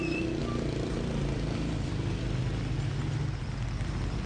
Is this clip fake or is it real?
real